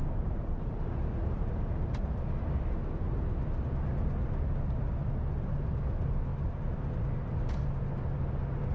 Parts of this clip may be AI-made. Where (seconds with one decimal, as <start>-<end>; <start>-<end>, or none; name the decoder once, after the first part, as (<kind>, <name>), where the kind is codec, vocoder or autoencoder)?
0.0-2.3 (vocoder, BigVGAN v2)